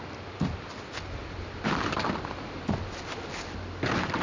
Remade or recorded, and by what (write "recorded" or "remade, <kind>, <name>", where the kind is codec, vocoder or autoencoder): recorded